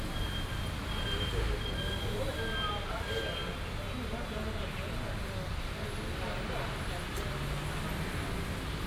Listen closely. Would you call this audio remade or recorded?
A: recorded